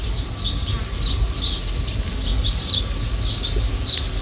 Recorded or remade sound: recorded